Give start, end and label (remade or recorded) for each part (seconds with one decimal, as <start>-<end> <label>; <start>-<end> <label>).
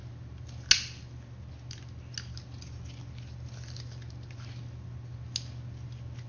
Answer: 0.0-6.3 recorded